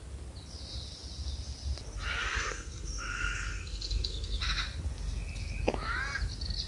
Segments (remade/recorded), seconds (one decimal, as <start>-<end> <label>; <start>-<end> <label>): 0.0-2.2 recorded; 2.2-4.4 remade; 4.4-6.7 recorded